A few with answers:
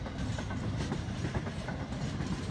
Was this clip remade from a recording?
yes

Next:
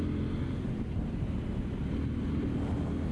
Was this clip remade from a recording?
no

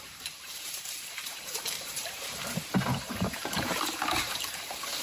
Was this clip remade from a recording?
yes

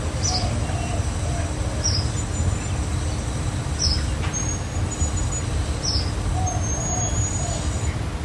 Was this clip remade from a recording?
no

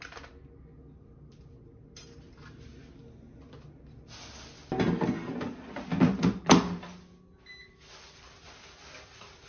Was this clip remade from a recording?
no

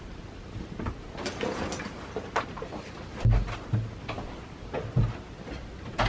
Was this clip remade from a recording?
no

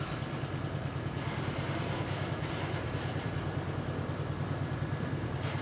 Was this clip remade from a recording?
yes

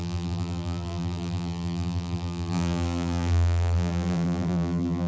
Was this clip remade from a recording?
yes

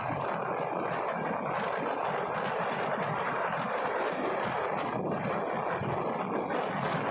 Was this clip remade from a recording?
no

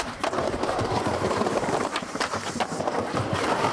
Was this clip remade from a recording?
yes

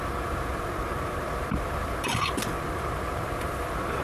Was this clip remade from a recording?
yes